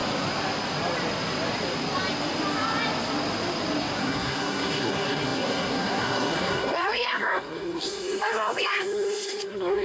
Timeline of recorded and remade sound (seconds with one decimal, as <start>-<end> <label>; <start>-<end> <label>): 0.0-4.0 recorded; 4.0-9.8 remade